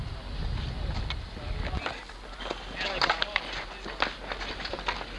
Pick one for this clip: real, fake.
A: real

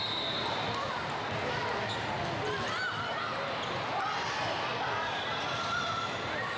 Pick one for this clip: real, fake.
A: real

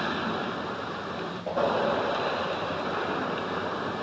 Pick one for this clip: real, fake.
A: real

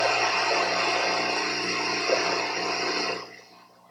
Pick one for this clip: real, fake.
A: real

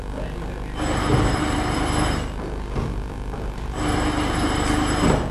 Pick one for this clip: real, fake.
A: real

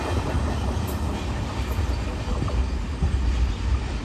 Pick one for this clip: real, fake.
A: real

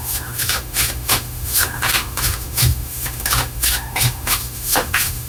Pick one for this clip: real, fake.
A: fake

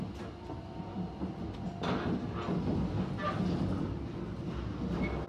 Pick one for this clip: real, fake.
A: real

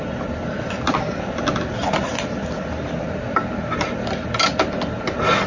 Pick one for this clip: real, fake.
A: real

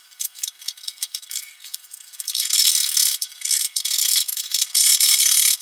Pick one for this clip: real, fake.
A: fake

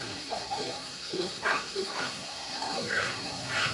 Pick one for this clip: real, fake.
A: fake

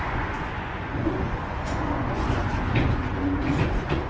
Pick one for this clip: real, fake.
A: fake